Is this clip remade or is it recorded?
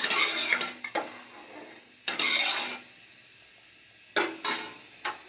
recorded